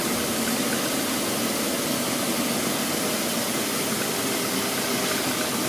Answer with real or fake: real